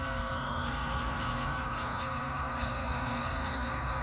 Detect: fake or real fake